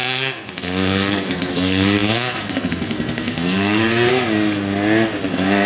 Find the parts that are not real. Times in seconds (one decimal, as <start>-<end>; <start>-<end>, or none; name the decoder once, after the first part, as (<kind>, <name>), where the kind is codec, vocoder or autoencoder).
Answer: 0.0-4.1 (codec, SNAC); 5.3-5.7